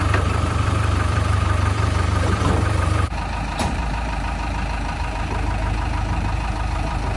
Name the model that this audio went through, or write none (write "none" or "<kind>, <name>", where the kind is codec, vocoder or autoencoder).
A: vocoder, BigVGAN v2